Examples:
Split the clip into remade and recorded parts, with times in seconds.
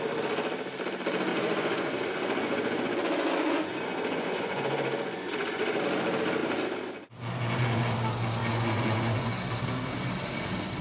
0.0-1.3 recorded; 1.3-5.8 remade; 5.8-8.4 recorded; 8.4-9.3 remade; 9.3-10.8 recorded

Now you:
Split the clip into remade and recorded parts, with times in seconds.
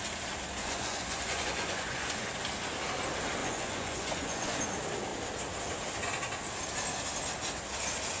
0.0-0.6 recorded; 0.6-2.3 remade; 2.3-3.4 recorded; 3.4-4.6 remade; 4.6-8.2 recorded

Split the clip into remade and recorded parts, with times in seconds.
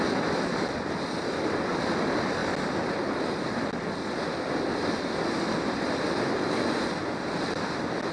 0.0-8.1 recorded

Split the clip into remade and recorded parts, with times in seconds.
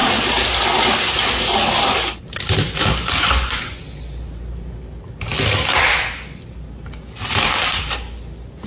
0.0-3.0 recorded; 3.0-3.8 remade; 3.8-8.7 recorded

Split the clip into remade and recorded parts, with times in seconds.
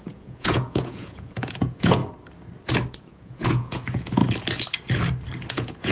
0.0-2.0 remade; 2.0-3.0 recorded; 3.0-4.2 remade; 4.2-5.5 recorded; 5.5-5.9 remade